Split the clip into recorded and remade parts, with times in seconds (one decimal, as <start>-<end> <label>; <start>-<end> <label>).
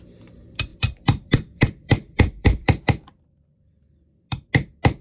0.0-0.7 recorded; 0.7-3.7 remade; 3.7-5.0 recorded